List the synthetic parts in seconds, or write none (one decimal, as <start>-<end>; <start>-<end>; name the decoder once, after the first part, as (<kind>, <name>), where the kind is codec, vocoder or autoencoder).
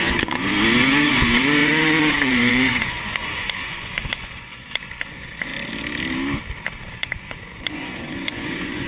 0.0-0.5 (vocoder, Vocos); 1.1-5.5; 6.9-8.9